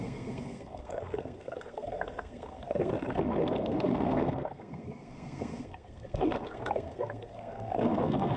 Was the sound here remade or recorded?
remade